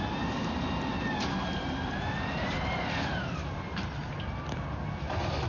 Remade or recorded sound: recorded